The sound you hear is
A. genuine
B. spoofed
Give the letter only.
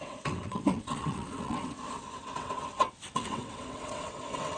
B